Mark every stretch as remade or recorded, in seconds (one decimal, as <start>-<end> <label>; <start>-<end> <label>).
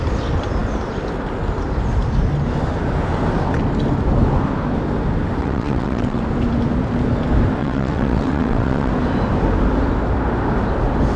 0.0-5.4 recorded; 5.4-6.2 remade; 6.2-7.6 recorded; 7.6-8.9 remade; 8.9-11.2 recorded